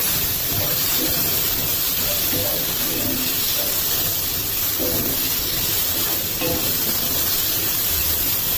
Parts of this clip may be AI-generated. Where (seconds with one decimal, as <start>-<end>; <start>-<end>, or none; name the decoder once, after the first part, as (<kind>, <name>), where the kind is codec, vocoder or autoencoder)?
0.0-1.5 (vocoder, BigVGAN v2)